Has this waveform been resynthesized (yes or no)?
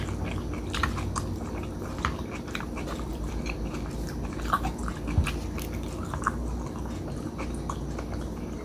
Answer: no